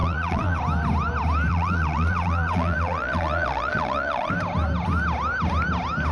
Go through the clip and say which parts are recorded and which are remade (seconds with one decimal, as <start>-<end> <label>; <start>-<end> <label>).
0.0-0.6 remade; 0.6-1.5 recorded; 1.5-4.3 remade; 4.3-6.1 recorded